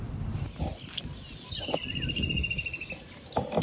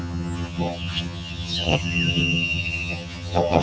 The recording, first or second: first